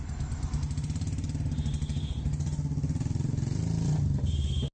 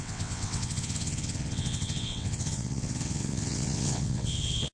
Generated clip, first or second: second